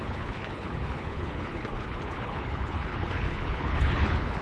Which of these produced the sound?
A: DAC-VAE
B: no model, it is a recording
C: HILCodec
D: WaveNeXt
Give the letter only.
C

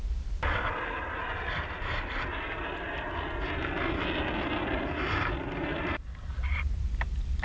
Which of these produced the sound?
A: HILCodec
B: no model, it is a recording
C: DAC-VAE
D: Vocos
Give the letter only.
B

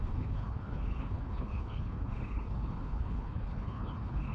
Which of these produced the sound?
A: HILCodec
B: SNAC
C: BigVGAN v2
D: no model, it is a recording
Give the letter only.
A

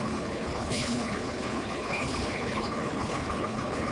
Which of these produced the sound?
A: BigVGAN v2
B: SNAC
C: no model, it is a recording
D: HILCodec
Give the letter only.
D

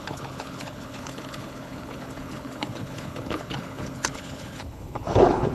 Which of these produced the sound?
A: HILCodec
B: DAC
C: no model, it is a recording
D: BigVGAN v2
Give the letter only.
A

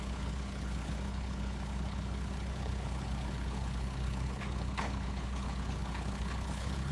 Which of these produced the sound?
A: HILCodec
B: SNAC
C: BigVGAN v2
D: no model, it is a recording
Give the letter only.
A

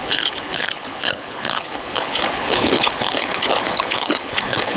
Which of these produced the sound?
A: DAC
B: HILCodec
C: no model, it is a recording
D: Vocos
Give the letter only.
B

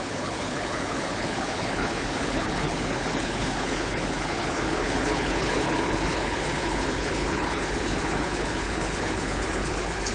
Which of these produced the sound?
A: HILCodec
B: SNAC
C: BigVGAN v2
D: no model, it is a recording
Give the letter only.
A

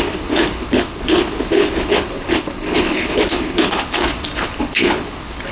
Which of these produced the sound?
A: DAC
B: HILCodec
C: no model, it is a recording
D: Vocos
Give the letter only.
B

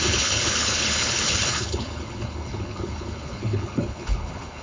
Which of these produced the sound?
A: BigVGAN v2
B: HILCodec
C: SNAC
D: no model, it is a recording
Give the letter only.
B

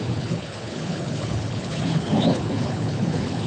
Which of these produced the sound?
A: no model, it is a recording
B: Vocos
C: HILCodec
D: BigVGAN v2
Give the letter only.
C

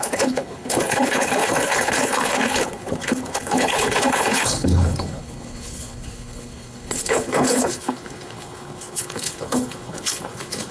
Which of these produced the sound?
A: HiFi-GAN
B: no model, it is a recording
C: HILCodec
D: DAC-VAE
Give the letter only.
C